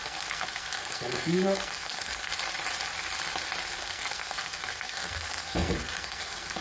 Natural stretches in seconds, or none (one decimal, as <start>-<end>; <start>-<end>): 2.3-3.7